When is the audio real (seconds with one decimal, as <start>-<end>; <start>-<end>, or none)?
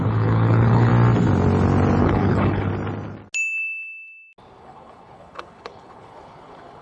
0.9-2.0; 2.7-4.6